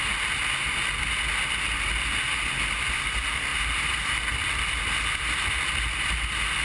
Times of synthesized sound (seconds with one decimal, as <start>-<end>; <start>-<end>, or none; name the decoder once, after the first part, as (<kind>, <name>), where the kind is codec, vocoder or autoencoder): none